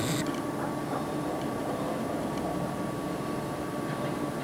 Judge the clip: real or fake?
real